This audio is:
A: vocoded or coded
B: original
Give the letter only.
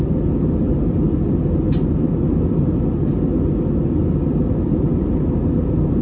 B